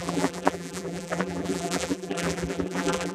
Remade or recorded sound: remade